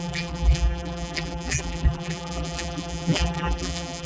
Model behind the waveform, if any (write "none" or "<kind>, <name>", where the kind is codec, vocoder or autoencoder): vocoder, BigVGAN v2